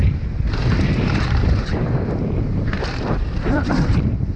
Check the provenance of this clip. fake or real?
fake